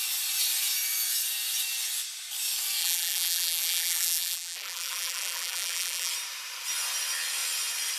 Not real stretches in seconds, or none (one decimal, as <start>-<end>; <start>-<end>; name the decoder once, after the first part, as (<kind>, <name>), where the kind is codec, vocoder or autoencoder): 2.8-6.1 (vocoder, BigVGAN v2)